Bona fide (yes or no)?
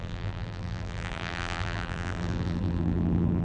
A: no